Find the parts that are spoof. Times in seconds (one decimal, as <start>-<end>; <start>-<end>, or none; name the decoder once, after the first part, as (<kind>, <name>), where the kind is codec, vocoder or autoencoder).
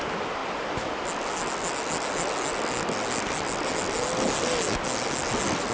none